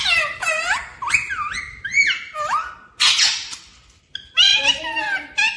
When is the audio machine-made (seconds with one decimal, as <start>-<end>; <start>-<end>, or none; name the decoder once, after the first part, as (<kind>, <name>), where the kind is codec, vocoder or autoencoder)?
none